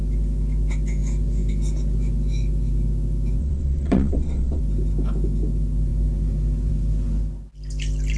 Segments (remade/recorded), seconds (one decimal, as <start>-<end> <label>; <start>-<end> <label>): 0.0-3.4 recorded; 3.4-4.6 remade; 4.6-8.2 recorded